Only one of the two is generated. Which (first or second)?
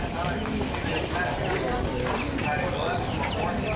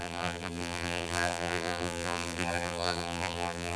second